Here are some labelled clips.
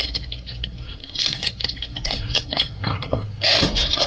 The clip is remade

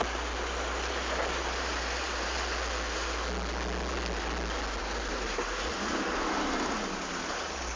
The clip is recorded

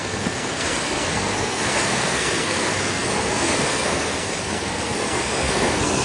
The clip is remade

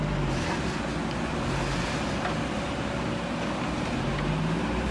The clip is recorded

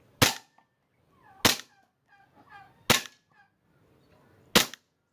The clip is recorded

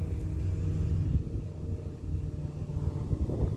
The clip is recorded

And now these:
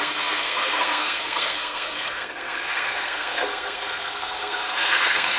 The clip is remade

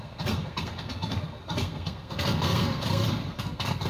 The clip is remade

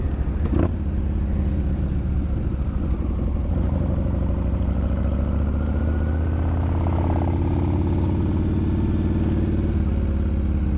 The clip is recorded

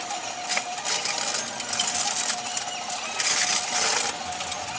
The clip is recorded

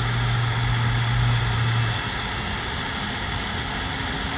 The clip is recorded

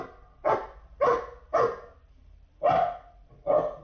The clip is recorded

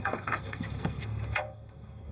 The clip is remade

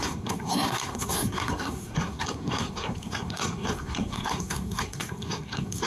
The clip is remade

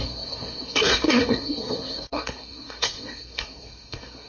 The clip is remade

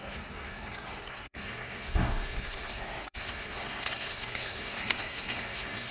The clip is remade